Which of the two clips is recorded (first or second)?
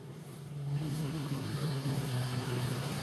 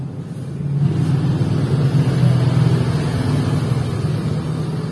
second